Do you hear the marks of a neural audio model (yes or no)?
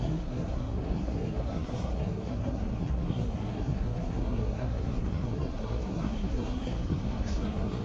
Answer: yes